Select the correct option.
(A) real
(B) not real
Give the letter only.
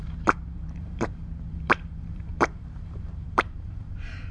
B